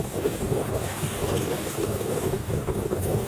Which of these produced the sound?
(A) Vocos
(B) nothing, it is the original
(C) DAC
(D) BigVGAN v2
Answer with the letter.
C